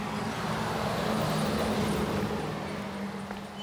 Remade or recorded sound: recorded